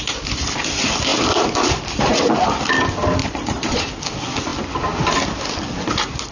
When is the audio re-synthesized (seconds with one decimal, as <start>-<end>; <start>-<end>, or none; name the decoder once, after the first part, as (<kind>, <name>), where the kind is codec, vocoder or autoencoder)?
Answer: 3.2-3.8 (vocoder, Vocos)